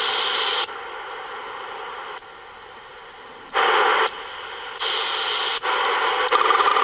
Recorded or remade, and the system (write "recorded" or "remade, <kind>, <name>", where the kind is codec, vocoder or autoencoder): recorded